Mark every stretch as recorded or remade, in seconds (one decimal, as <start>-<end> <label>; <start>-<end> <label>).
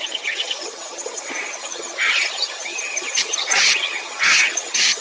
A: 0.0-5.0 remade